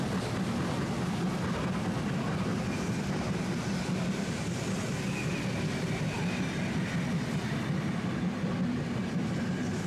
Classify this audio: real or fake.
real